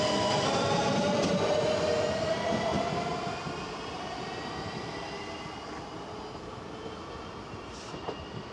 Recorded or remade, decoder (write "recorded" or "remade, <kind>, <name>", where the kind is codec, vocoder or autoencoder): recorded